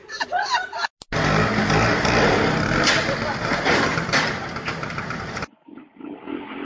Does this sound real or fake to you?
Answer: real